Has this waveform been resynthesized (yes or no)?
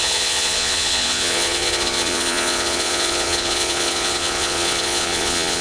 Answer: yes